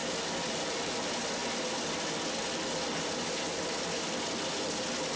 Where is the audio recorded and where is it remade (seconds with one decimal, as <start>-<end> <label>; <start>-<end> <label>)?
0.0-5.2 recorded